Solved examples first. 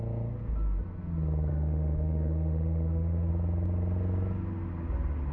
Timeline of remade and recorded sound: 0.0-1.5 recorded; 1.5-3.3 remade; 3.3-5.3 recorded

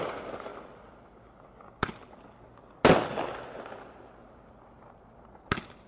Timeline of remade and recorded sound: 0.0-5.9 recorded

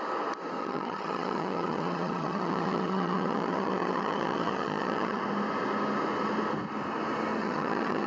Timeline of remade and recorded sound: 0.0-0.6 recorded; 0.6-5.2 remade; 5.2-7.4 recorded; 7.4-8.1 remade

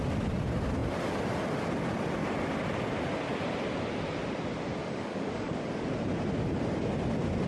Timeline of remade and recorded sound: 0.0-4.8 recorded; 4.8-5.6 remade; 5.6-7.5 recorded

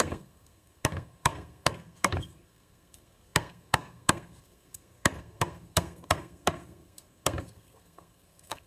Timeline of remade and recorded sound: 0.0-8.7 remade

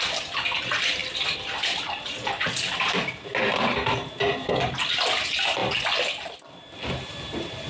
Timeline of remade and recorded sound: 0.0-7.7 recorded